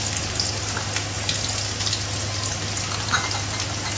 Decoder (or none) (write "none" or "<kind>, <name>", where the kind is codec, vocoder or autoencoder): none